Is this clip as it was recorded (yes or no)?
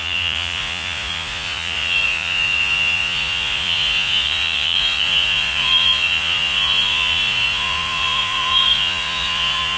no